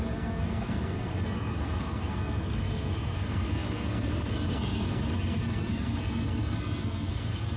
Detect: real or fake fake